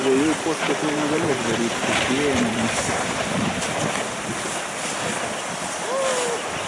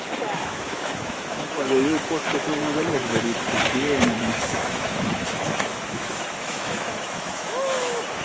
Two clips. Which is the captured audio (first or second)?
first